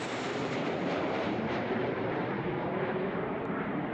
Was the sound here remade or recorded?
remade